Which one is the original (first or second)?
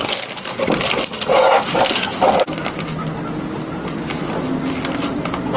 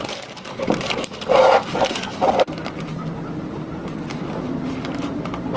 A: first